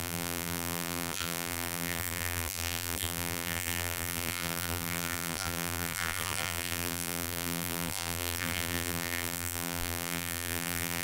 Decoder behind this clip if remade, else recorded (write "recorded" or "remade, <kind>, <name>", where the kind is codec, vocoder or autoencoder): remade, vocoder, BigVGAN v2